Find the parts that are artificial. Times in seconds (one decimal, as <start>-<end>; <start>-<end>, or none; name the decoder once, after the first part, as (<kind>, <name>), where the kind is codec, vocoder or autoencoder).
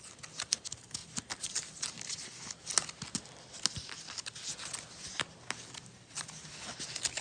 none